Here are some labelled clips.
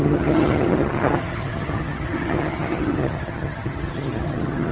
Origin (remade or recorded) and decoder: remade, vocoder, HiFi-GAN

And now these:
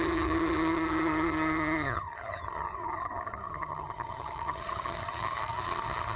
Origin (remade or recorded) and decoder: remade, vocoder, HiFi-GAN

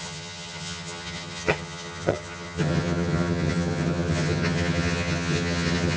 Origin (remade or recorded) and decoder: remade, vocoder, HiFi-GAN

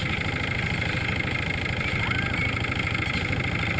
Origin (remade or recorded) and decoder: recorded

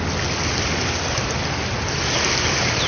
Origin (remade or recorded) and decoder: recorded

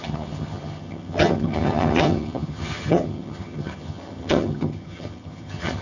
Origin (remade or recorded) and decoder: remade, vocoder, HiFi-GAN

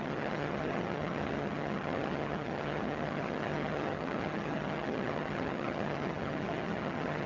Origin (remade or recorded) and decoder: remade, vocoder, HiFi-GAN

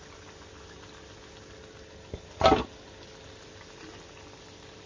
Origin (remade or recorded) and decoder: recorded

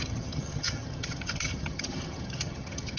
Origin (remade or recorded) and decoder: remade, vocoder, HiFi-GAN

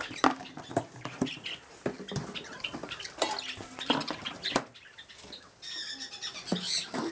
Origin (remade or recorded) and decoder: recorded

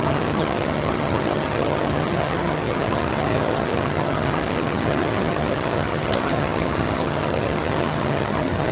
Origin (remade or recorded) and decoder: remade, vocoder, HiFi-GAN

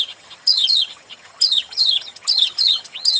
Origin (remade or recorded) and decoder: remade, vocoder, HiFi-GAN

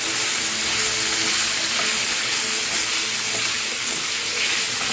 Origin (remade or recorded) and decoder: recorded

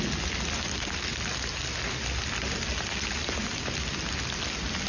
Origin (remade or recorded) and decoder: recorded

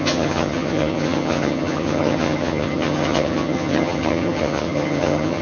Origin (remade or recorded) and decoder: remade, vocoder, HiFi-GAN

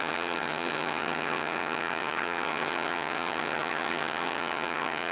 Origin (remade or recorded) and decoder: remade, vocoder, HiFi-GAN